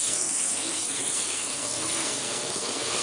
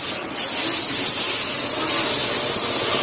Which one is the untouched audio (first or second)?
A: second